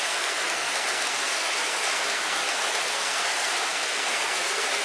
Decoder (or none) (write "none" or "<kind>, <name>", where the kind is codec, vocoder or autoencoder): codec, SNAC